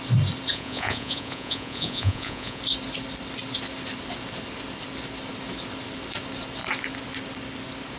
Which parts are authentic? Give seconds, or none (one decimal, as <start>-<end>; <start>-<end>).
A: 0.0-0.5; 2.6-8.0